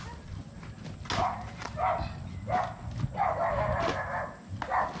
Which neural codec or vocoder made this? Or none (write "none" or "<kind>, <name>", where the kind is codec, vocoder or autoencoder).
none